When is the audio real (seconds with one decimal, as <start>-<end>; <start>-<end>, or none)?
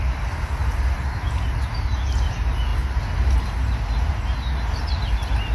0.0-5.5